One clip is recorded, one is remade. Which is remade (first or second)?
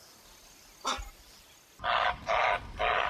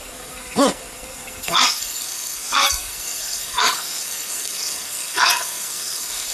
second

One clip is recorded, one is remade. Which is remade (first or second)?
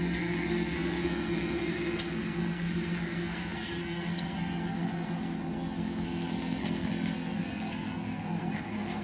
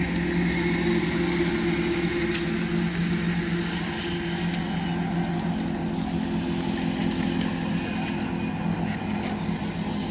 first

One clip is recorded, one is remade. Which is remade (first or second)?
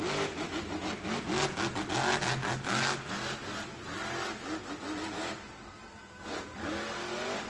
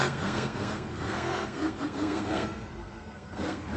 second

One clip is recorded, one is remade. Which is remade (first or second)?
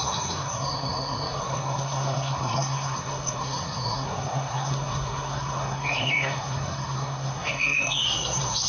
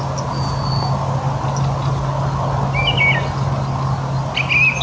first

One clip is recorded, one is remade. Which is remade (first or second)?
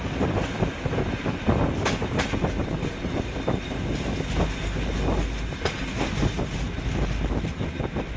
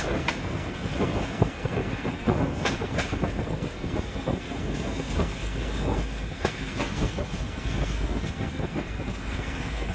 second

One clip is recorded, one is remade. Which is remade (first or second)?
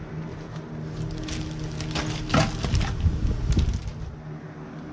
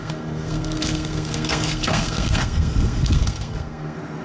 second